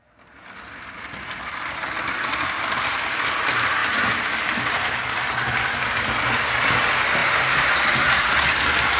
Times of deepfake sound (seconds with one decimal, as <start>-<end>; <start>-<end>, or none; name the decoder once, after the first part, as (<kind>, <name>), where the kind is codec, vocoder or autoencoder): 3.8-5.0 (vocoder, BigVGAN v2); 7.2-8.2